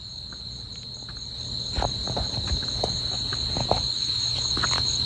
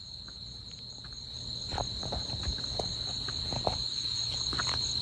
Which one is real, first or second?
first